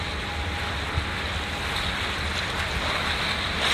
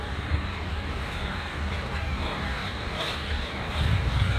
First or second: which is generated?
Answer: second